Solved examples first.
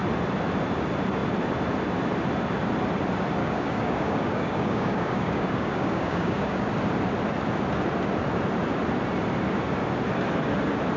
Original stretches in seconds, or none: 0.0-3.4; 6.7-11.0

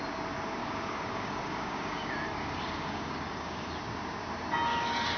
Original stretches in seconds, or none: 0.0-0.6; 3.7-5.2